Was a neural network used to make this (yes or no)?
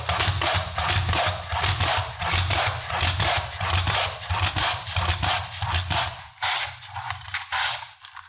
no